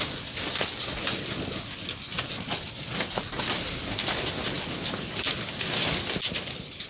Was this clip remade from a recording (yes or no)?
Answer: no